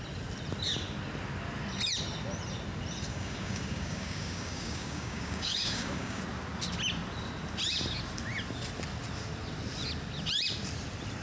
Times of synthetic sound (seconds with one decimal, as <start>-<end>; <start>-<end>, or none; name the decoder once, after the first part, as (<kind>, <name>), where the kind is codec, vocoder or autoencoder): 3.1-6.2 (codec, DAC)